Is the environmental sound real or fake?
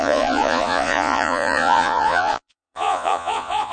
fake